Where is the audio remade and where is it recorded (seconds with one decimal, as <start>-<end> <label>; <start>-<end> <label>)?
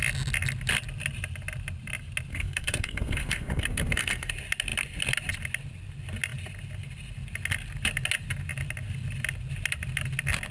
0.0-2.3 recorded; 2.3-4.3 remade; 4.3-10.5 recorded